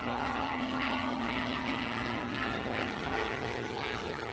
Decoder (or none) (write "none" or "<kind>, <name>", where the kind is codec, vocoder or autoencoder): vocoder, HiFi-GAN